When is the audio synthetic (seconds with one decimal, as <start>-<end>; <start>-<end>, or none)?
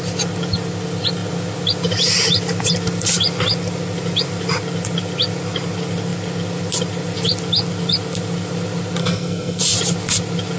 9.0-9.6